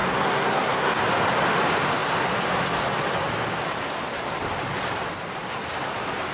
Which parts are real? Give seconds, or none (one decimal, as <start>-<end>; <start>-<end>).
0.9-6.3